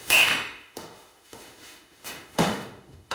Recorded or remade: remade